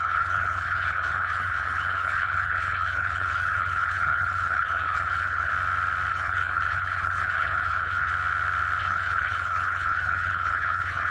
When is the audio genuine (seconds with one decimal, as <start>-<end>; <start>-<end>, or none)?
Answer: 5.5-6.1; 8.1-8.8